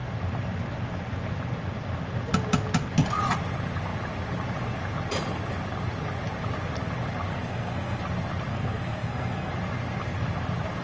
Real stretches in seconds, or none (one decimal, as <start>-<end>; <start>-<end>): 0.0-7.3; 8.0-8.5; 9.5-10.8

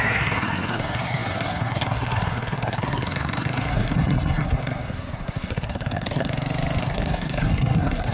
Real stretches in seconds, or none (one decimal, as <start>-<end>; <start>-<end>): 6.3-6.8

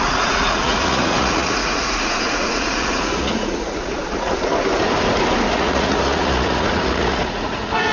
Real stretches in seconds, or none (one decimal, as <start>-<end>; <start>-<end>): 4.5-5.5

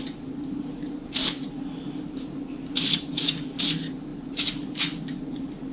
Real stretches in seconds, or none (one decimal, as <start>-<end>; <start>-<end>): 0.0-5.7